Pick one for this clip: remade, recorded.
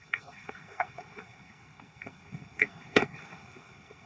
remade